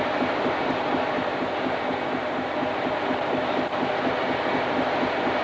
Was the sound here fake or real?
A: real